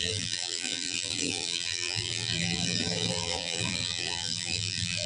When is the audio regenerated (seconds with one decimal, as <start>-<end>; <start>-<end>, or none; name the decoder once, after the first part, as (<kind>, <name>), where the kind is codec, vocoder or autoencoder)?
0.0-5.1 (vocoder, BigVGAN v2)